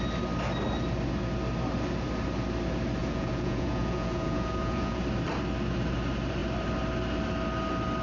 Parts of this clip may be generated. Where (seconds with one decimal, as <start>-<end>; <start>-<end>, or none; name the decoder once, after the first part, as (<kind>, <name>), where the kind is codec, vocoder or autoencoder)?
3.0-5.0 (vocoder, Vocos)